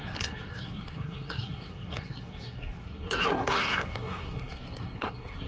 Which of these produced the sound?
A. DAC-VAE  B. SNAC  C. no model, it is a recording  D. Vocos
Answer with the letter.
B